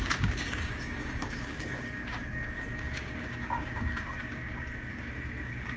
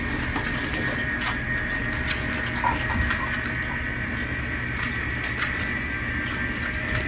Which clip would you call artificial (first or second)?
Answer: first